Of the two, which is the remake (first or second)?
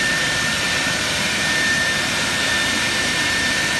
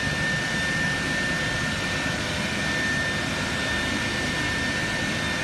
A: first